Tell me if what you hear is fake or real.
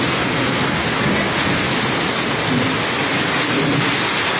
real